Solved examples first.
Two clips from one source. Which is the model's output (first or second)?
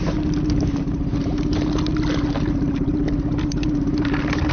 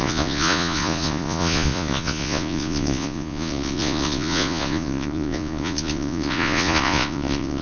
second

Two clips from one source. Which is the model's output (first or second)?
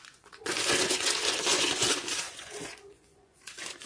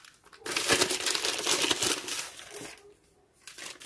first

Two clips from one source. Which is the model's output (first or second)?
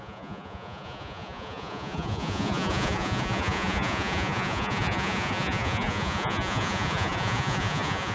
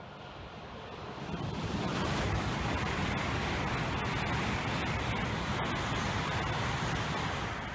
first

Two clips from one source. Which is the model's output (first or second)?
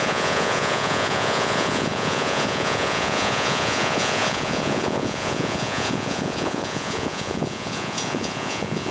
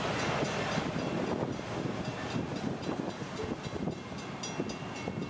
first